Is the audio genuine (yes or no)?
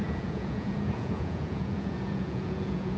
no